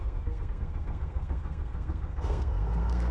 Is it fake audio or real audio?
fake